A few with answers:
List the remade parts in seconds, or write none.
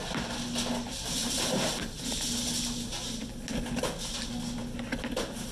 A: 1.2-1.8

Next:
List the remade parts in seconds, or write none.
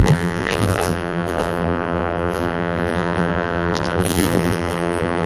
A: 0.0-5.3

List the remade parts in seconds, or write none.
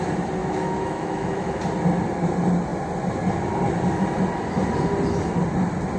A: 0.4-1.6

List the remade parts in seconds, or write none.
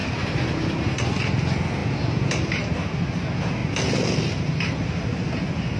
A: none